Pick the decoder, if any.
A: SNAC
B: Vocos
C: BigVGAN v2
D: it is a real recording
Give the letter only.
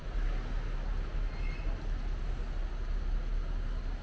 D